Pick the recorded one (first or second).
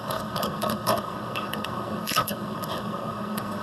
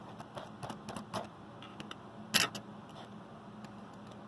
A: second